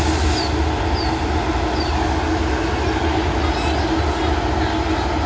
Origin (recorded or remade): recorded